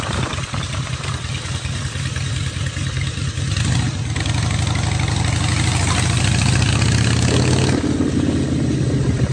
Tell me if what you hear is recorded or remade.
recorded